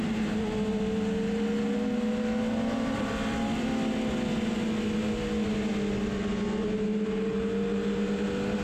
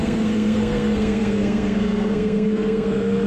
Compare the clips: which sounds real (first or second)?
first